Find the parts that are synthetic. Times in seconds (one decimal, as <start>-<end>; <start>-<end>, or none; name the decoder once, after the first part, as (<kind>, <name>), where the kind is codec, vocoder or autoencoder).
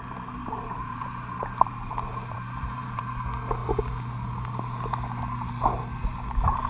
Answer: 0.4-3.0 (vocoder, BigVGAN v2)